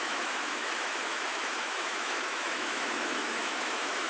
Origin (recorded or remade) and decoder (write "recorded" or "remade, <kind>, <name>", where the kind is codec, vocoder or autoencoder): remade, autoencoder, DAC-VAE